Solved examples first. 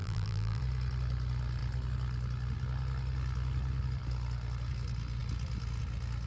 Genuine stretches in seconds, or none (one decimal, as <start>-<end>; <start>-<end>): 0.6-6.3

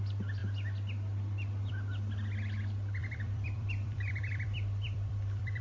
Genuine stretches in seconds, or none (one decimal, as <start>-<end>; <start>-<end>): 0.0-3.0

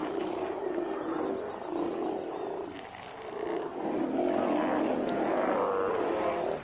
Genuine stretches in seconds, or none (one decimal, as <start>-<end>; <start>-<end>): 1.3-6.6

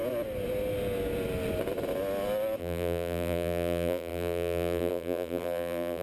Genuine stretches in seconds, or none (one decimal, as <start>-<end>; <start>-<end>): 0.0-2.6